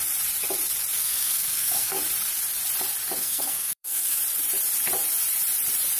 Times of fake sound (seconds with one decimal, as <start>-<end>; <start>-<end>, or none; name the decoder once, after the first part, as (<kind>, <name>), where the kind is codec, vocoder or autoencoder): 1.0-2.0 (codec, SNAC); 3.2-4.2